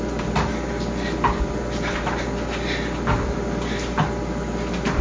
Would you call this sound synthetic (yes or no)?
no